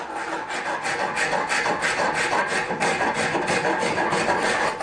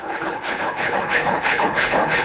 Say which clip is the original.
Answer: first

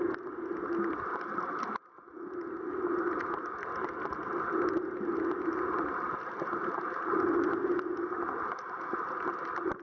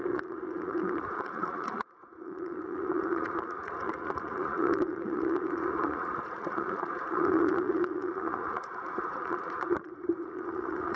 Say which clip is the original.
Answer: first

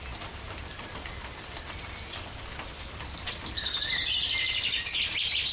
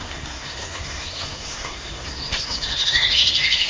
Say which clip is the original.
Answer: first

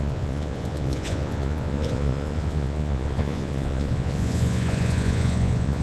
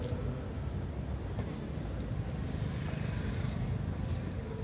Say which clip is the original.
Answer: second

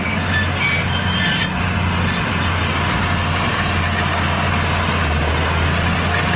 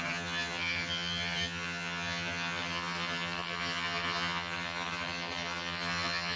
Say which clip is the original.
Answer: first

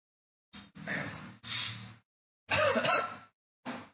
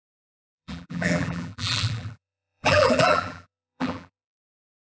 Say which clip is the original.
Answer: first